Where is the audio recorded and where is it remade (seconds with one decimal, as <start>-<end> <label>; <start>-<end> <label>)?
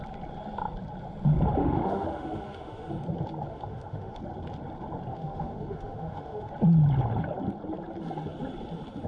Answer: 0.0-1.6 recorded; 1.6-2.9 remade; 2.9-3.5 recorded; 3.5-4.2 remade; 4.2-5.1 recorded; 5.1-6.5 remade; 6.5-9.1 recorded